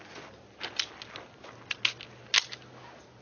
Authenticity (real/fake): real